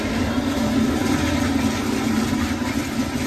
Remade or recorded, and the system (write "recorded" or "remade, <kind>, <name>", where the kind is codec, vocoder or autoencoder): recorded